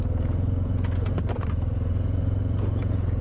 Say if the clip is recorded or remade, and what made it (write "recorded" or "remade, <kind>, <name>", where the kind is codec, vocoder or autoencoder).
remade, vocoder, Vocos